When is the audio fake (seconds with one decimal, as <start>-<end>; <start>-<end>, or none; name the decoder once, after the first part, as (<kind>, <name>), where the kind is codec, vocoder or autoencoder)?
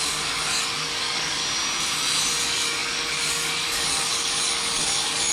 0.0-1.4 (codec, DAC); 2.4-5.3